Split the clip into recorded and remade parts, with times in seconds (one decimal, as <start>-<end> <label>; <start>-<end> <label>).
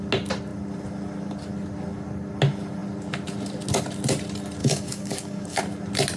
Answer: 0.0-4.6 recorded; 4.6-5.6 remade; 5.6-6.2 recorded